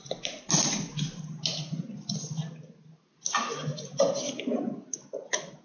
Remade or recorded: recorded